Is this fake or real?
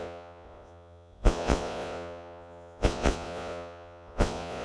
fake